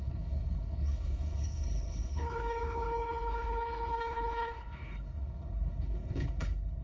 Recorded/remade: remade